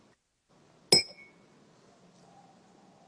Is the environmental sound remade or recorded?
recorded